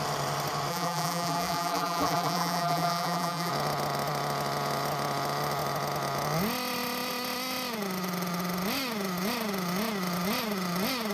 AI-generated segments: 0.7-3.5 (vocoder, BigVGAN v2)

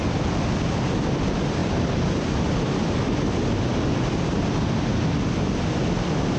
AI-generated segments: 1.6-3.4 (vocoder, BigVGAN v2)

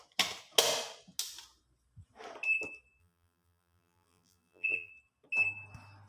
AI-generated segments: 3.0-4.9 (vocoder, BigVGAN v2)

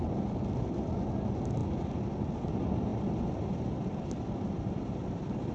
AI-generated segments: 2.9-5.5 (vocoder, BigVGAN v2)